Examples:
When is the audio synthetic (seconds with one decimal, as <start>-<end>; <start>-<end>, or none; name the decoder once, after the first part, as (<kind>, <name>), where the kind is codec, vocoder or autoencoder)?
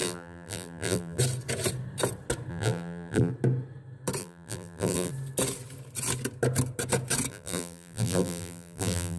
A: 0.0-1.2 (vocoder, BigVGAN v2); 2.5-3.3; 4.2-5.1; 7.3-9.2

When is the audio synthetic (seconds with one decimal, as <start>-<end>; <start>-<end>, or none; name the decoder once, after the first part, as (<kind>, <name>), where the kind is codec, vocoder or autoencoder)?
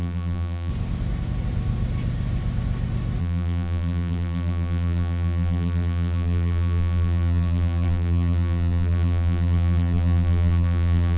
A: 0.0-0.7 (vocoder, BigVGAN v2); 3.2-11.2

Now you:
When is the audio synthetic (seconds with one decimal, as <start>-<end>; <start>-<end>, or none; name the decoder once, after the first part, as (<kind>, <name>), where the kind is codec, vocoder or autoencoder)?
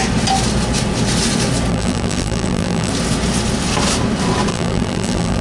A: 1.7-2.9 (vocoder, BigVGAN v2); 4.5-5.4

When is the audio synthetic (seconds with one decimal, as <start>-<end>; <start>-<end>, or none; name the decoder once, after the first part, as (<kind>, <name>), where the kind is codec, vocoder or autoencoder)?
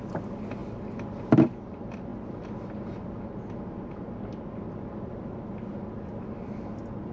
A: none